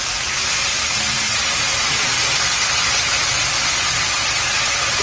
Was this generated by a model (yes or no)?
no